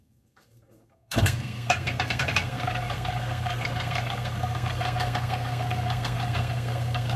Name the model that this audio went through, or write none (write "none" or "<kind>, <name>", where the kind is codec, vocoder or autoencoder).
codec, SNAC